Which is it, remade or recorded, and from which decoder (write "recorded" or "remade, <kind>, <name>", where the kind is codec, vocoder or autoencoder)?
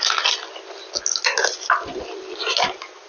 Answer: recorded